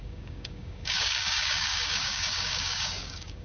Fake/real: fake